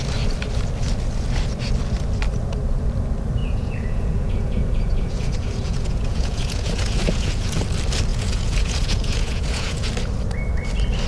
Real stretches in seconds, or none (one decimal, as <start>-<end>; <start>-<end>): 0.0-3.4; 7.6-8.1; 9.9-11.1